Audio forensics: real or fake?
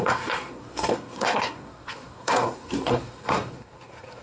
fake